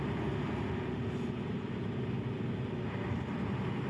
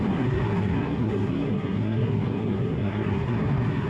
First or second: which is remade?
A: second